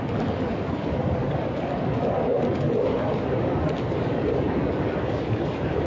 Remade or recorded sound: remade